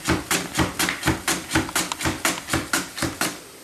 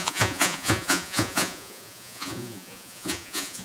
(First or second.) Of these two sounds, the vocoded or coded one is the second